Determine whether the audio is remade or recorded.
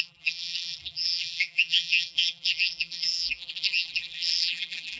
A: remade